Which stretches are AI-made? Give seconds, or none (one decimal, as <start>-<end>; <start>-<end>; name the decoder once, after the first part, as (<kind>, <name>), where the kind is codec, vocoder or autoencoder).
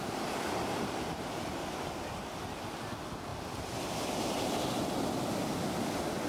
none